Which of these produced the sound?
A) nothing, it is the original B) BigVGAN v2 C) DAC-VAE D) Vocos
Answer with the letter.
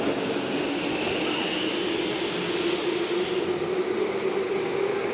A